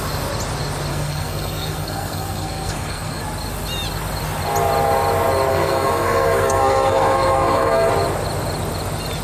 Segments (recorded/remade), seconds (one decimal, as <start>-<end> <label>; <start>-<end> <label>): 0.0-0.9 recorded; 0.9-3.2 remade; 3.2-5.5 recorded; 5.5-7.9 remade; 7.9-9.2 recorded